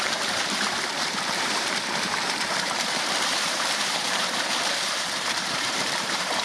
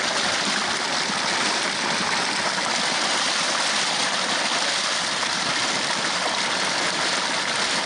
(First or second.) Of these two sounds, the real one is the second